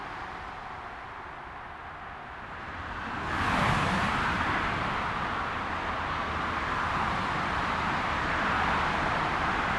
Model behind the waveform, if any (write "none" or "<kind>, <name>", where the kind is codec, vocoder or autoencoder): none